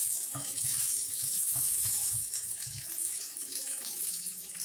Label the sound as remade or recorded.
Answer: remade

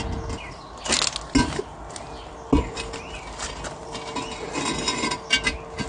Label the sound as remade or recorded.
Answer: recorded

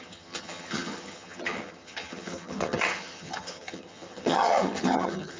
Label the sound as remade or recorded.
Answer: remade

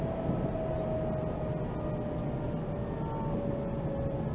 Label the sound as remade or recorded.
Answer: recorded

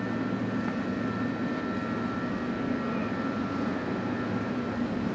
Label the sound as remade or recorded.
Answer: recorded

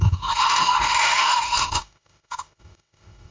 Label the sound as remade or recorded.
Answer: remade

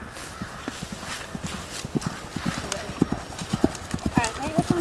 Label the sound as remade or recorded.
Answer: recorded